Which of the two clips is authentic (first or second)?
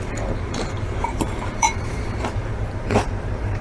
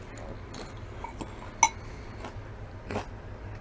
second